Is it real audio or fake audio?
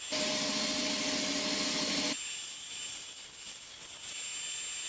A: real